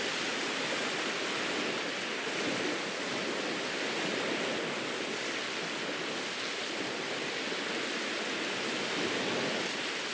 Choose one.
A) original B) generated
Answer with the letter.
A